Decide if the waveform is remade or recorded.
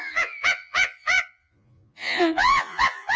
remade